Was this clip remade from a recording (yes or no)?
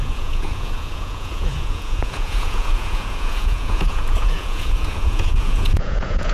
yes